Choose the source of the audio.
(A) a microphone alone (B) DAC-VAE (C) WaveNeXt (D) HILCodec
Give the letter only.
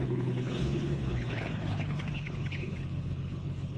D